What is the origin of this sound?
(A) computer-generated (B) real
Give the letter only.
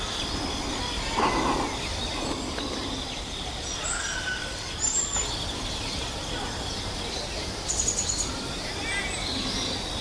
B